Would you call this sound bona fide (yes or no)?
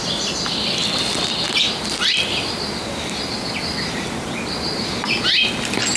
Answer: yes